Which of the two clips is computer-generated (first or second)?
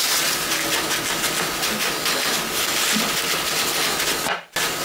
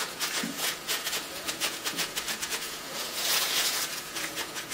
second